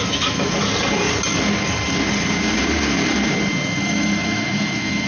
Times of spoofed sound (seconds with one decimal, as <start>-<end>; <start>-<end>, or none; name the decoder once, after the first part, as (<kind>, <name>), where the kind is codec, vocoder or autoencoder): 0.0-0.7 (autoencoder, DAC-VAE); 3.8-5.1